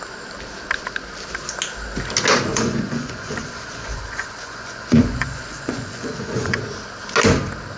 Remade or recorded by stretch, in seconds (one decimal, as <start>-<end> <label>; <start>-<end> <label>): 0.0-2.5 recorded; 2.5-6.6 remade; 6.6-7.8 recorded